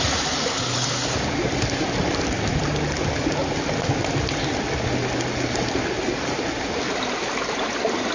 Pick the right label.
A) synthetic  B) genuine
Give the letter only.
B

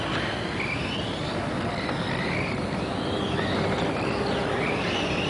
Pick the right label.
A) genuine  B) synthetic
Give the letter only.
A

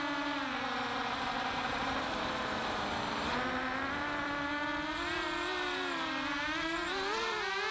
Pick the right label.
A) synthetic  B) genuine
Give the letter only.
A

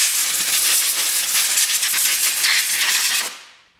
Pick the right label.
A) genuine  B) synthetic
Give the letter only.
A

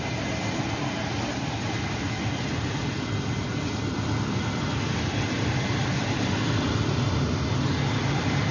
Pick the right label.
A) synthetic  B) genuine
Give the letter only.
B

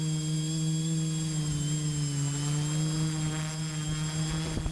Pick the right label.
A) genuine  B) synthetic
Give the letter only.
A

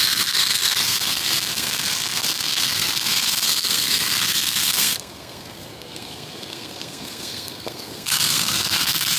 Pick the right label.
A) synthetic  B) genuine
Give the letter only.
A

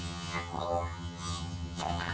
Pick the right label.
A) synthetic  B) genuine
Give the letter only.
A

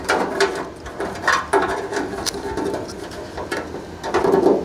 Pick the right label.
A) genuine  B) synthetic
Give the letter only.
B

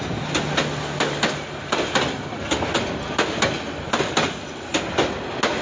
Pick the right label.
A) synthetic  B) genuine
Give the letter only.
B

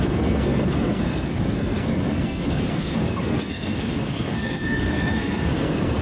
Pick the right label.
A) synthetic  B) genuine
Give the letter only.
A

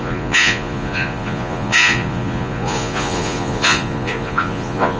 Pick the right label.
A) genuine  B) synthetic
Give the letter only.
B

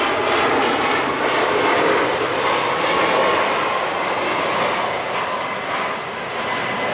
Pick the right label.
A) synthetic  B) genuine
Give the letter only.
B